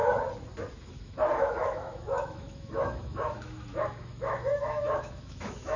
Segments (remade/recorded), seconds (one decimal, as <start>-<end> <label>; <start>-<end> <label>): 0.0-0.8 recorded; 0.8-5.8 remade